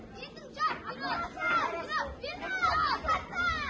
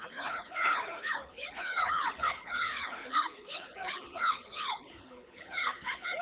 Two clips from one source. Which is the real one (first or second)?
first